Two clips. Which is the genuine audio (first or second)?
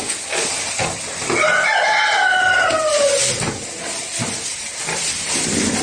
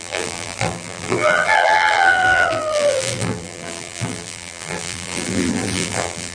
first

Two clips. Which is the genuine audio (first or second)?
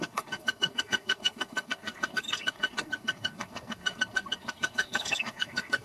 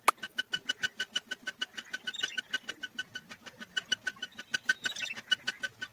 second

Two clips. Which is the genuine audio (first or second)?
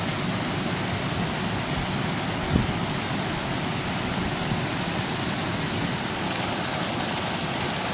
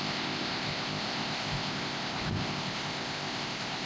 first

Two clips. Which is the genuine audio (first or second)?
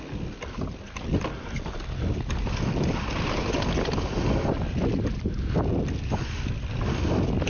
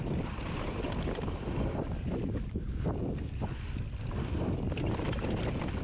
first